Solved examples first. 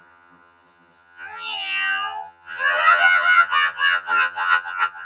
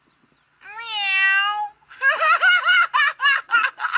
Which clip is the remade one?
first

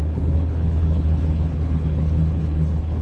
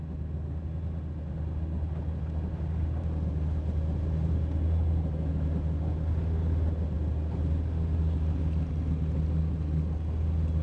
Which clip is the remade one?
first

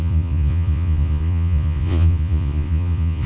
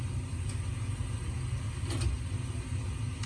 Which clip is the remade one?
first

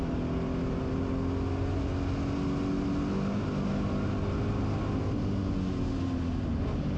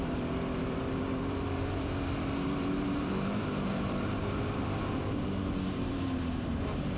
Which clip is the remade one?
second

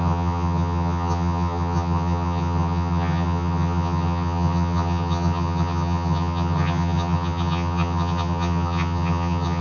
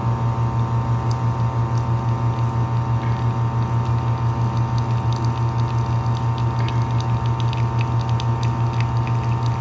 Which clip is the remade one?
first